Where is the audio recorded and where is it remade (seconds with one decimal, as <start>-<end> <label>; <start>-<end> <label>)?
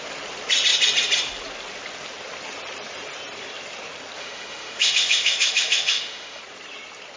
0.0-4.2 recorded; 4.2-6.4 remade; 6.4-7.2 recorded